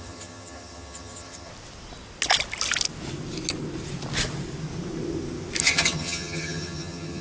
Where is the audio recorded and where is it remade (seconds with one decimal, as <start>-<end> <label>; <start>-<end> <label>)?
0.0-1.5 remade; 1.5-5.6 recorded; 5.6-7.2 remade